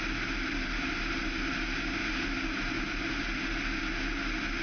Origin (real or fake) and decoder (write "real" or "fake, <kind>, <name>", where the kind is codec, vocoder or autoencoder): real